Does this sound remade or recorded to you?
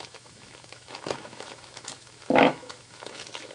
remade